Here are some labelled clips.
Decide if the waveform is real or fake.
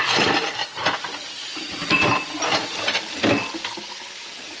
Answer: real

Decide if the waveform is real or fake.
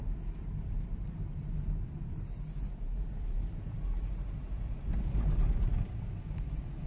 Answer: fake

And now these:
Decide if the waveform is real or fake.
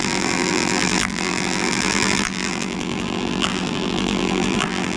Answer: fake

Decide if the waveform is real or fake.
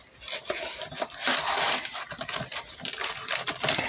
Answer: real